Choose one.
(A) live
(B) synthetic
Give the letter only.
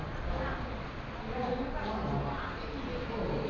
A